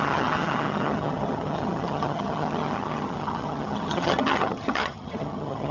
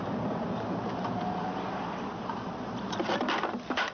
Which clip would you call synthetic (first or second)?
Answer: first